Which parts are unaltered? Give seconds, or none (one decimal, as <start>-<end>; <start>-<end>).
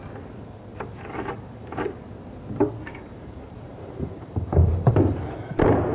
0.0-0.7; 2.0-2.9; 5.3-5.9